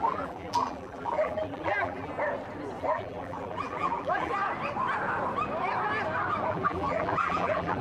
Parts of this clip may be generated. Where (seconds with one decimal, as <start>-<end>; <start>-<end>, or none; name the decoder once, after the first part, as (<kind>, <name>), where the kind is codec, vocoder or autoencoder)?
0.0-2.1 (vocoder, BigVGAN v2); 2.8-4.3; 6.5-7.8